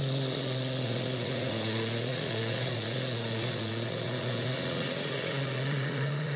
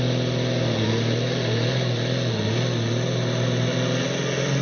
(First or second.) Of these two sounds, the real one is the second